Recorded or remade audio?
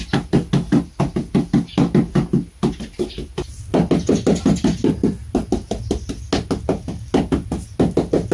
recorded